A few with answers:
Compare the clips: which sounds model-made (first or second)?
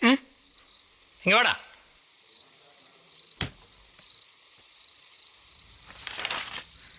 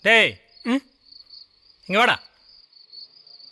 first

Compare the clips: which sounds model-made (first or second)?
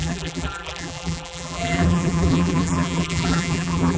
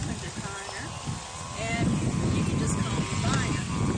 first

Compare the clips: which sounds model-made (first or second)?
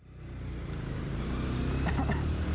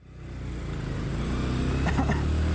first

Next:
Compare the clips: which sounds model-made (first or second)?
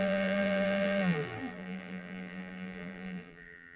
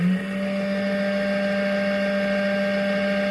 first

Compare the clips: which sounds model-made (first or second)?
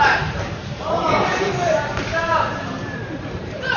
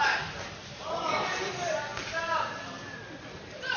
first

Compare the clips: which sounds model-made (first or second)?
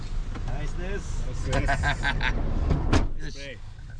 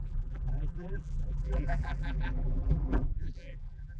second